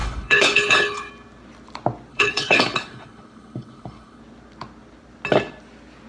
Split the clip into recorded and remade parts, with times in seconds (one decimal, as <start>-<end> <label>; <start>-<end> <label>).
0.0-1.1 remade; 1.1-2.1 recorded; 2.1-4.2 remade; 4.2-6.1 recorded

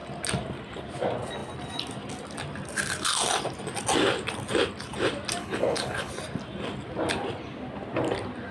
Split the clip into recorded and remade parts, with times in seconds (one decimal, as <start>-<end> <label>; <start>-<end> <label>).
0.0-5.4 recorded; 5.4-6.1 remade; 6.1-8.5 recorded

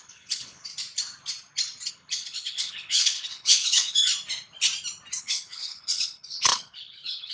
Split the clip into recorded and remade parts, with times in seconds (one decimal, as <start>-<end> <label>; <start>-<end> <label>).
0.0-0.7 remade; 0.7-1.9 recorded; 1.9-4.1 remade; 4.1-5.2 recorded; 5.2-7.3 remade

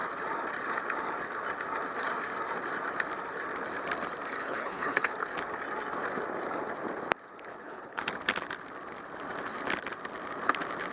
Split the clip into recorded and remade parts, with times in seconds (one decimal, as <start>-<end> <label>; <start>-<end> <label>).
0.0-4.4 recorded; 4.4-5.1 remade; 5.1-7.5 recorded; 7.5-8.0 remade; 8.0-10.9 recorded

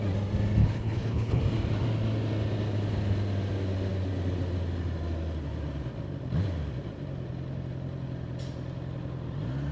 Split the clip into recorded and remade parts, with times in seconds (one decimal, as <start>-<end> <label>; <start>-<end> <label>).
0.0-0.6 recorded; 0.6-1.4 remade; 1.4-9.7 recorded

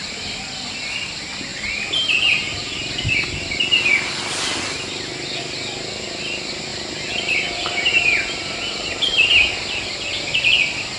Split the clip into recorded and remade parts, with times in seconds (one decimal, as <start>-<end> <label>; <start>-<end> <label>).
0.0-11.0 recorded

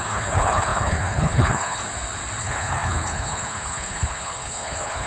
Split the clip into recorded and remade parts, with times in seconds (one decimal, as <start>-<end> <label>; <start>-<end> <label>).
0.0-1.8 remade; 1.8-2.4 recorded; 2.4-5.1 remade

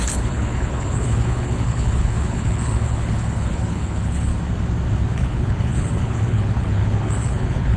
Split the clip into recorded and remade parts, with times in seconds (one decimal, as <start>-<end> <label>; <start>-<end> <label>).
0.0-4.3 remade; 4.3-5.1 recorded; 5.1-7.8 remade